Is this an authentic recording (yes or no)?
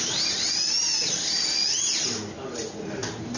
yes